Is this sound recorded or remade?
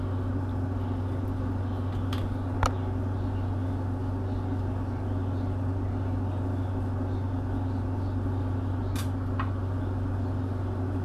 recorded